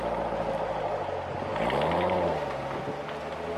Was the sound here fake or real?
real